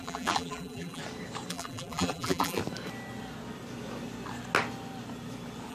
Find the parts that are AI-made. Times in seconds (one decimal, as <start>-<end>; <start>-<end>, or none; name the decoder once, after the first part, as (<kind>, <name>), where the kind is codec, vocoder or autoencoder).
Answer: 0.0-1.0 (vocoder, BigVGAN v2); 1.5-2.6